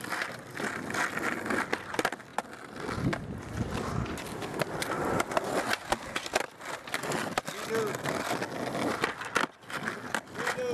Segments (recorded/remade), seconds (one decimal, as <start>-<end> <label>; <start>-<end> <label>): 0.0-10.7 recorded